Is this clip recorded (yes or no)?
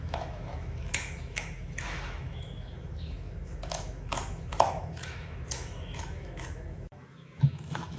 no